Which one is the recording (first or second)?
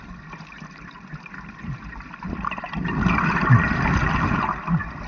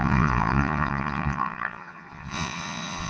first